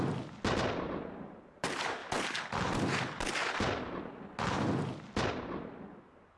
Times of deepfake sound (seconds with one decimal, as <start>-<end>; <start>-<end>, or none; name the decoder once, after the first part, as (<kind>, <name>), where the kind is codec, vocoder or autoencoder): none